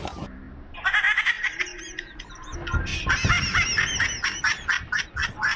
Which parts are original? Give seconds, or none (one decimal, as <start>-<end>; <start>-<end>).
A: 0.0-5.6